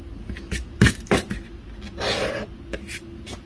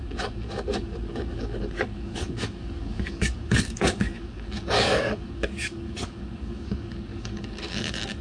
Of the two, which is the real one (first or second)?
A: first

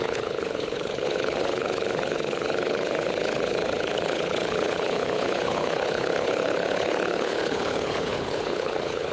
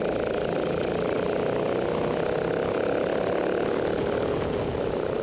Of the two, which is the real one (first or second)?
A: second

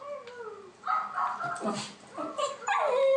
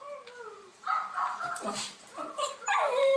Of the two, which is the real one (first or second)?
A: first